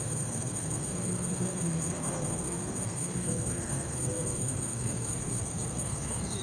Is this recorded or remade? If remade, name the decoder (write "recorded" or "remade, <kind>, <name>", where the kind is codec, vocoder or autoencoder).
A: remade, codec, SNAC